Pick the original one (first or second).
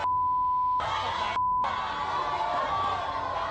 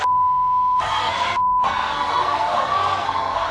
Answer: first